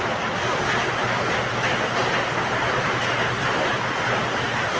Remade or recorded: recorded